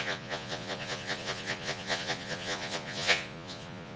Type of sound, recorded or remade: remade